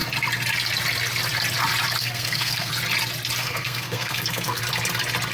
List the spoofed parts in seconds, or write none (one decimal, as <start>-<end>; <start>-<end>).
2.0-2.7; 3.4-4.6